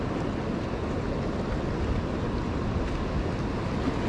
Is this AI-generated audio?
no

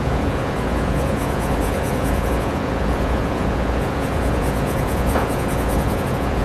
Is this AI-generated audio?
yes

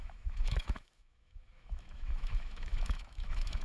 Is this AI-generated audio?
yes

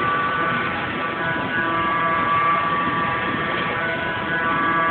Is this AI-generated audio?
yes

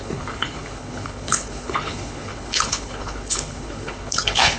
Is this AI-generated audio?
yes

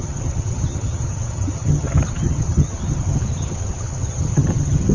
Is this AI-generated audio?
yes